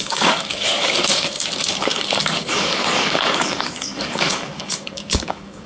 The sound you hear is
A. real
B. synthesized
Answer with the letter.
B